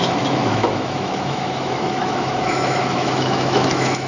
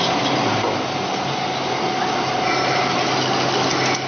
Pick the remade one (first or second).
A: first